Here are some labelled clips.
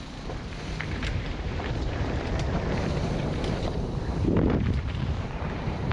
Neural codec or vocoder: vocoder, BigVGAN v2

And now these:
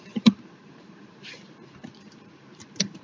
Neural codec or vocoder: vocoder, BigVGAN v2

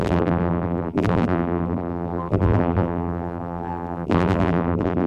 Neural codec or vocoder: vocoder, BigVGAN v2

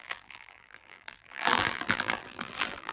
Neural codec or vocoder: vocoder, BigVGAN v2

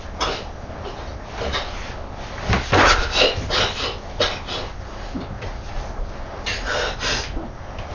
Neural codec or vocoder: none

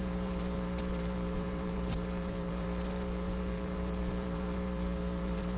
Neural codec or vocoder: vocoder, BigVGAN v2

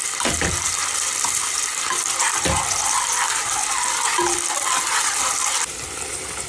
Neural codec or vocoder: vocoder, BigVGAN v2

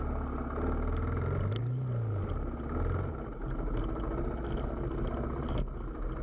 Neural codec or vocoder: none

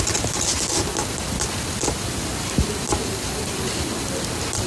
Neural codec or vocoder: none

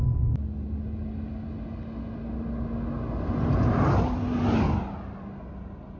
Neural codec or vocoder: none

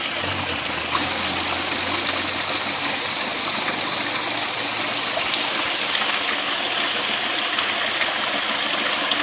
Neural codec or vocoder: none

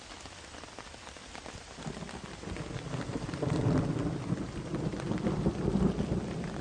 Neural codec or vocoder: none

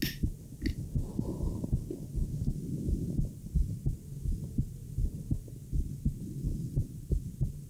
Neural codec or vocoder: none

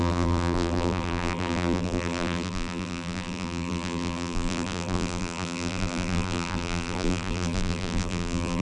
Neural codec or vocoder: vocoder, BigVGAN v2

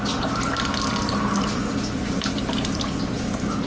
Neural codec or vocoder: none